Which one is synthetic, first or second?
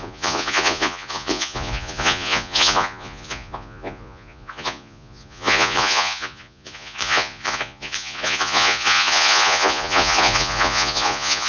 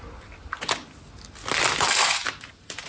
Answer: first